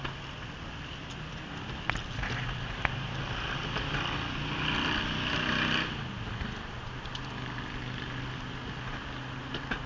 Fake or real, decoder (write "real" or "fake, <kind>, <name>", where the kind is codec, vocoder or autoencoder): real